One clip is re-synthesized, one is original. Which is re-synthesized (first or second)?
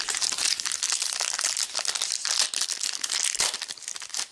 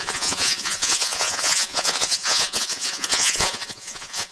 second